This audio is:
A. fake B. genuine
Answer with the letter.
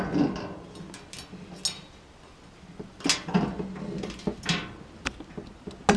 B